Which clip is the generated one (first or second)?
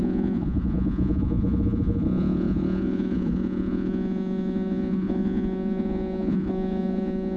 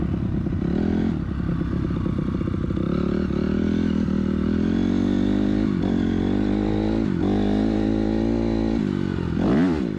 first